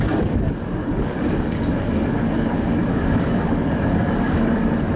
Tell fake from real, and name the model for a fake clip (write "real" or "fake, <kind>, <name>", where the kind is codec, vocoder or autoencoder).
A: fake, codec, DAC